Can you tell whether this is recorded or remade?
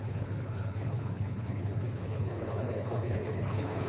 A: remade